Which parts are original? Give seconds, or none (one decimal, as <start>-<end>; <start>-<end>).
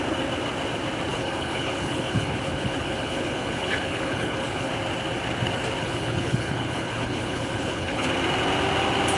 0.0-1.1; 4.7-5.8; 8.1-9.2